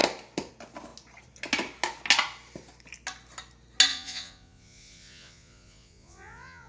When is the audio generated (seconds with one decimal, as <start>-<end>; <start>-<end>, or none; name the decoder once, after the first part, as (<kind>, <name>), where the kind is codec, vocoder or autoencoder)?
3.9-6.7 (vocoder, Vocos)